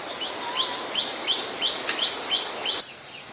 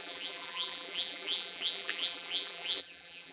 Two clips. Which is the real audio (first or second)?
first